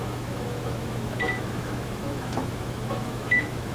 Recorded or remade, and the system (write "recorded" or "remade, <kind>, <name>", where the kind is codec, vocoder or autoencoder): remade, autoencoder, DAC-VAE